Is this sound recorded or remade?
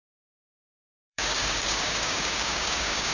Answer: remade